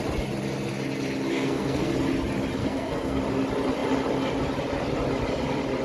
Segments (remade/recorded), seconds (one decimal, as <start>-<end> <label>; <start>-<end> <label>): 0.0-1.3 recorded; 1.3-1.9 remade; 1.9-2.6 recorded; 2.6-3.2 remade; 3.2-5.8 recorded